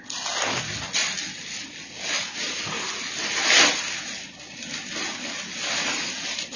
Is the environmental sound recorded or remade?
recorded